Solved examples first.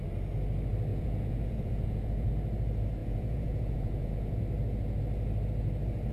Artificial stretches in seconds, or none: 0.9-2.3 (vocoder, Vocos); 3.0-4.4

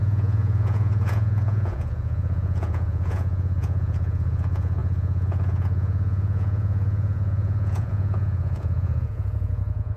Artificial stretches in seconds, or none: 0.0-10.0 (vocoder, Vocos)

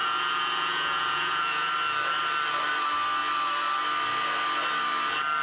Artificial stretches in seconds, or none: 0.0-1.7 (vocoder, Vocos)

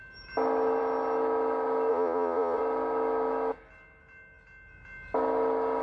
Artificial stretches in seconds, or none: 1.9-2.6 (vocoder, Vocos)

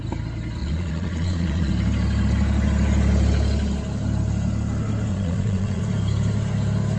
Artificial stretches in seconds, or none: 0.6-1.7 (vocoder, Vocos); 5.1-5.8

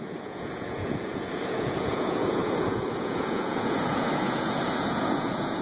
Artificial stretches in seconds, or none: 0.0-5.6 (vocoder, Vocos)